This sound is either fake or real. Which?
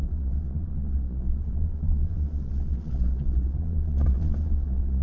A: fake